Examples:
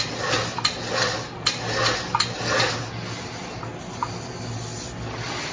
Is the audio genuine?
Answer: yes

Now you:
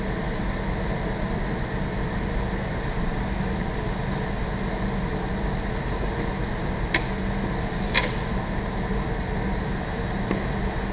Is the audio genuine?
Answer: yes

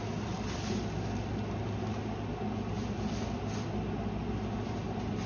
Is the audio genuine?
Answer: yes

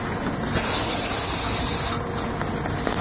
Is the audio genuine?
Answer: yes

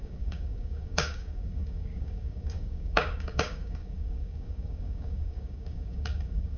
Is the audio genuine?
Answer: no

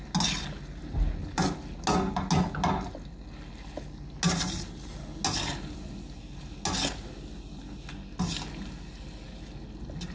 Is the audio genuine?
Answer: yes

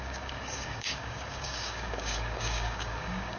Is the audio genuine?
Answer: no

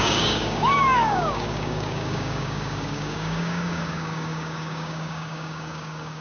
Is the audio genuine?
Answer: no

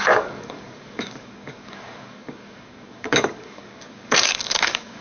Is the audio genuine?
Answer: no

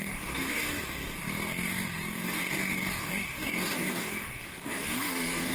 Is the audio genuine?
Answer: no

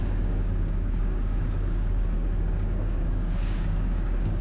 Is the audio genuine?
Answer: no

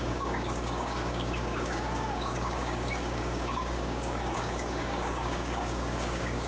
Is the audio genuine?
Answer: no